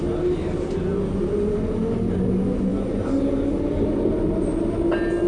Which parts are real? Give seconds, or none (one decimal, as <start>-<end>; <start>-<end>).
0.0-5.3